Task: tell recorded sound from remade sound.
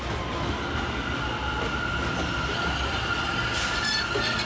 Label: recorded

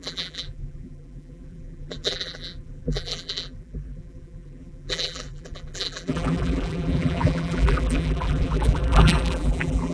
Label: remade